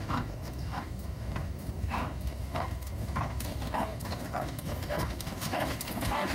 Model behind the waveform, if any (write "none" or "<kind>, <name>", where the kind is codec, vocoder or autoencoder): codec, DAC